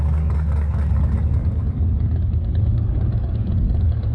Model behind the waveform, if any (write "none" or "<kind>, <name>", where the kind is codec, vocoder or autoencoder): codec, DAC